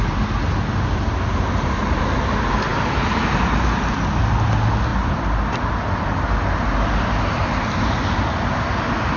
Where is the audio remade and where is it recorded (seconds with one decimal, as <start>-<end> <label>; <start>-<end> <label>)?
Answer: 0.0-9.2 recorded